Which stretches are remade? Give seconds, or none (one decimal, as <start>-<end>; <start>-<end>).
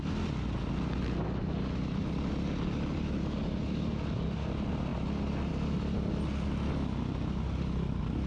none